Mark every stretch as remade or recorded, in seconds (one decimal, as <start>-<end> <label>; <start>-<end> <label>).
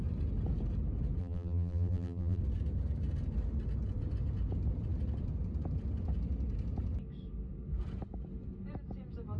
0.0-1.2 recorded; 1.2-2.4 remade; 2.4-9.4 recorded